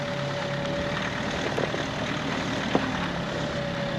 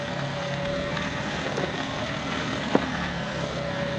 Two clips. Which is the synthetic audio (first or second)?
second